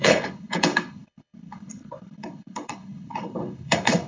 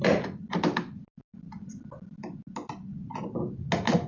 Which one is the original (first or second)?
second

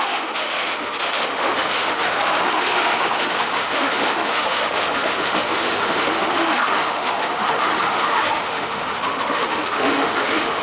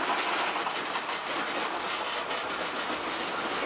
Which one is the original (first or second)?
second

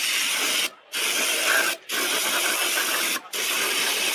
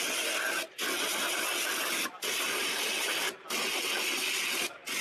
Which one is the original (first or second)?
second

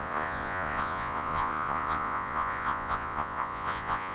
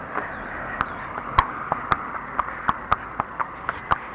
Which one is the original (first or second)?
second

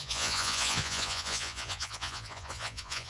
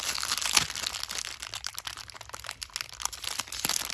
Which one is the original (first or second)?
second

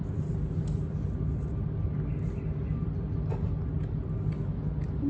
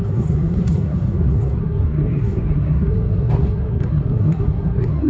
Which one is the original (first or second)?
first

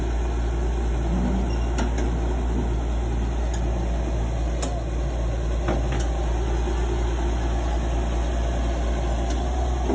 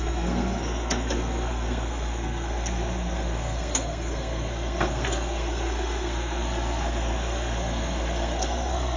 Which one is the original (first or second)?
first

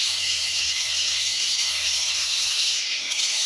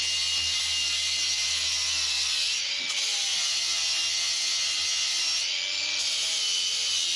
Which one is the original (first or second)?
second